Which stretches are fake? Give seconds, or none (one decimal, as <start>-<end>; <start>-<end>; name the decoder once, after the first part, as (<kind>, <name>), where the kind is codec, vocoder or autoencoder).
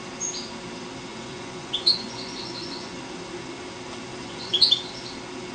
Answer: 1.1-3.0 (vocoder, Vocos); 4.2-4.7